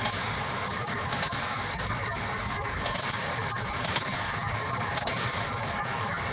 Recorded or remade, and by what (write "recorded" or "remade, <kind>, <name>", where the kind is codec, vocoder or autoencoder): remade, codec, DAC